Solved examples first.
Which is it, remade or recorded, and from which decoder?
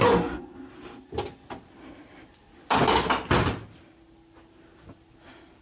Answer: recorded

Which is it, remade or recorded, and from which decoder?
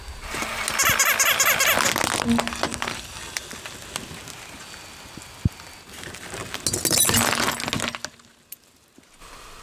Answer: recorded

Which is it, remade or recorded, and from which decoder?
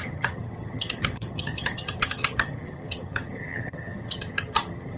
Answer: remade, vocoder, HiFi-GAN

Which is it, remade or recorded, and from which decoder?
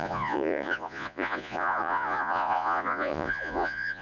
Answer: remade, vocoder, Vocos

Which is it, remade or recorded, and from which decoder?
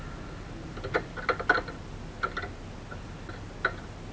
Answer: recorded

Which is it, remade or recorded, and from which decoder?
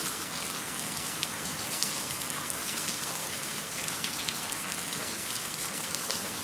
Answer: remade, codec, SNAC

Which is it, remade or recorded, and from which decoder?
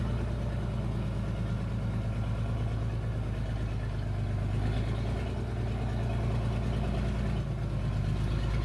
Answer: recorded